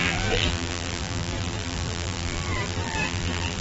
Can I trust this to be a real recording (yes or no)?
no